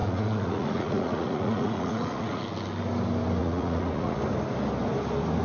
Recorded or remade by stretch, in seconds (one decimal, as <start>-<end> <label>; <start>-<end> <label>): 0.0-2.4 remade; 2.4-3.4 recorded; 3.4-4.2 remade; 4.2-5.4 recorded